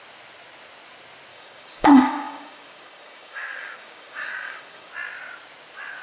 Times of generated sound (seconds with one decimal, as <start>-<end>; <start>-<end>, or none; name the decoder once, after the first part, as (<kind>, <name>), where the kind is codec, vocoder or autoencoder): 1.3-4.9 (codec, DAC)